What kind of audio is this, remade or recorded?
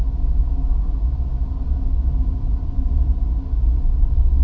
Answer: recorded